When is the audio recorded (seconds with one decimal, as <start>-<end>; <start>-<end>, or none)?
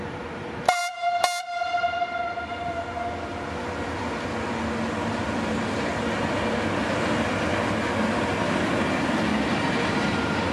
0.8-4.9; 5.9-9.5